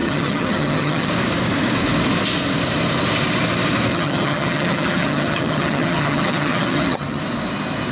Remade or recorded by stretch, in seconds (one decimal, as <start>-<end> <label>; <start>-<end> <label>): 0.0-1.1 remade; 1.1-3.9 recorded; 3.9-7.2 remade; 7.2-7.9 recorded